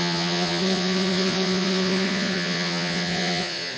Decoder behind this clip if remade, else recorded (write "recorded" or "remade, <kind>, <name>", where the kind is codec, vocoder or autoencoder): remade, vocoder, Vocos